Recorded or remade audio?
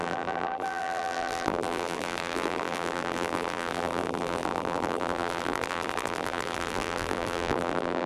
remade